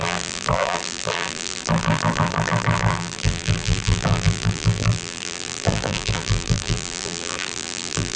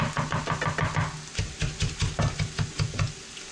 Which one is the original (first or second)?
second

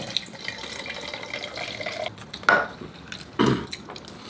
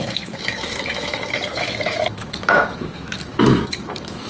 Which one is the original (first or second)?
first